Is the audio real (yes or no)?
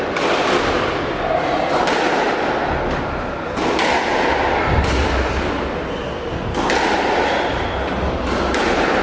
yes